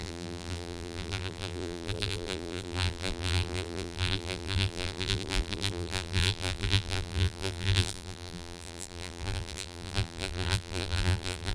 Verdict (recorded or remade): remade